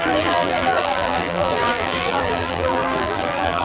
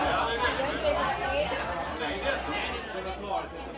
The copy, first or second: first